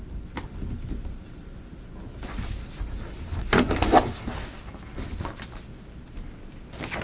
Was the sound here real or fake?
real